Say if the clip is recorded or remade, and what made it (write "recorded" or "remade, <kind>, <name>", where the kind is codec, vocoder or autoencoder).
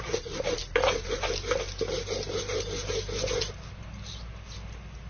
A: recorded